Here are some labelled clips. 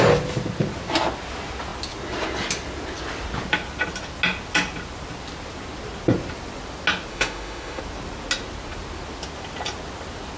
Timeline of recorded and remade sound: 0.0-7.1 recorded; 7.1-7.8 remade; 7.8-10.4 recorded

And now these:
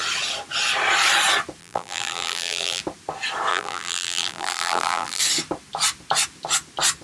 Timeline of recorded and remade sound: 0.0-1.6 recorded; 1.6-2.8 remade; 2.8-3.5 recorded; 3.5-5.2 remade; 5.2-7.0 recorded

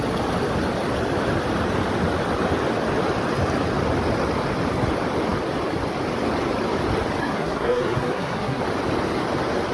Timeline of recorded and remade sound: 0.0-7.2 recorded; 7.2-8.6 remade; 8.6-9.7 recorded

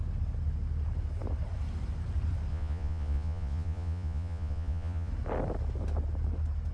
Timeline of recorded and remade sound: 0.0-2.5 recorded; 2.5-5.1 remade; 5.1-6.7 recorded

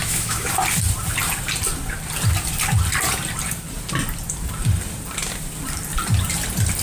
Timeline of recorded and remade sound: 0.0-0.5 remade; 0.5-6.8 recorded